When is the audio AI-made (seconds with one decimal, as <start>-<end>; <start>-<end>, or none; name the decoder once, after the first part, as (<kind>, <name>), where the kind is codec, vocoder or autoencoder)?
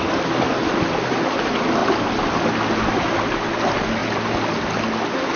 none